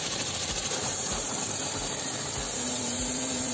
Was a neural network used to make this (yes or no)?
yes